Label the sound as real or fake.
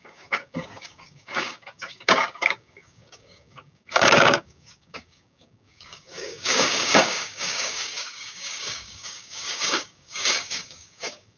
fake